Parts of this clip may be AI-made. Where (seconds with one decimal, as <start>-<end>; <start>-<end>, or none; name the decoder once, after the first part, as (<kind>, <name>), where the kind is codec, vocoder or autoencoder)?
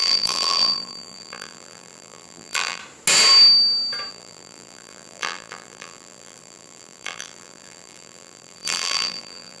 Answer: 0.0-2.8 (vocoder, BigVGAN v2); 4.1-9.6